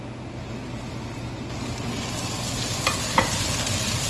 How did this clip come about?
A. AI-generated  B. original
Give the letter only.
B